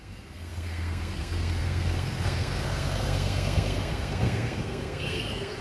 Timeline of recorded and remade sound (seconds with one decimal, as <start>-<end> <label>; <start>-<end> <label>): 0.0-5.6 remade